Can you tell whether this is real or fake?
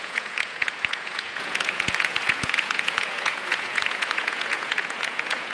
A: fake